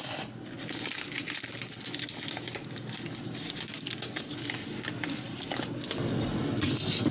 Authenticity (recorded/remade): recorded